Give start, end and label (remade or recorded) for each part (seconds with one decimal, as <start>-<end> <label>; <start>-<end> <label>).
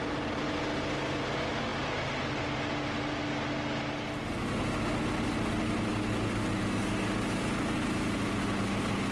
0.0-0.6 remade; 0.6-9.1 recorded